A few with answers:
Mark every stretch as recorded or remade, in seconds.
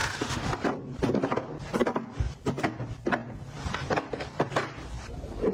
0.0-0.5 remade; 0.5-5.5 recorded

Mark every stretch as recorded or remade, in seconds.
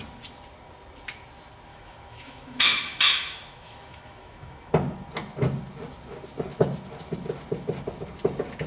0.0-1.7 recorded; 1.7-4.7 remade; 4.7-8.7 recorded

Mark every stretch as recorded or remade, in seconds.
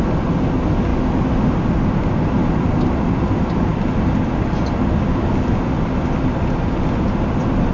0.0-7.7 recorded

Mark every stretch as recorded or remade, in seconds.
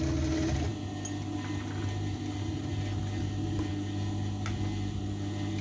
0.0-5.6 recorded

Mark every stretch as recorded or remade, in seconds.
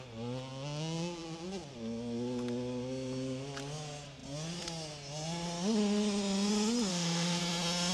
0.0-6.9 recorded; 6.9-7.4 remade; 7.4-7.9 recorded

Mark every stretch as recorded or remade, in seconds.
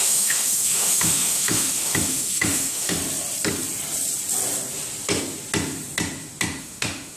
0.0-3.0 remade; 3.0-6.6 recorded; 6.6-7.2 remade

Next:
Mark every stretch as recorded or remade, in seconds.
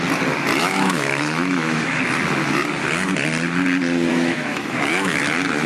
0.0-0.6 recorded; 0.6-2.0 remade; 2.0-4.1 recorded; 4.1-5.2 remade; 5.2-5.7 recorded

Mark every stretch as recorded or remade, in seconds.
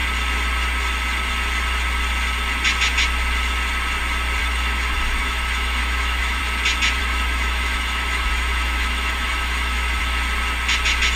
0.0-4.4 recorded; 4.4-6.4 remade; 6.4-7.0 recorded; 7.0-10.0 remade; 10.0-11.2 recorded